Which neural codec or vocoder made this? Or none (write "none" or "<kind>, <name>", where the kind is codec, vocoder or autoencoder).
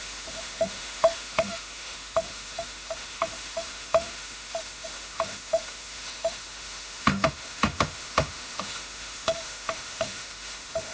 autoencoder, DAC-VAE